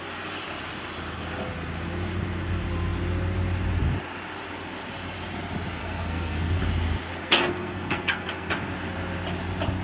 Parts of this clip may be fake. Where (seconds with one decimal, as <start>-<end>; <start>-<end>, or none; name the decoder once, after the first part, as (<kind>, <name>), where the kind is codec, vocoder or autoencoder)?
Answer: 5.8-6.6 (codec, SNAC); 7.2-8.5